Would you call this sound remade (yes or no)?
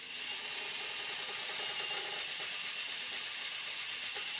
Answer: no